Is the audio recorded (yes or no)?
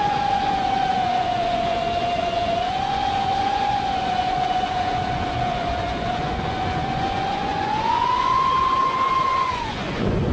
no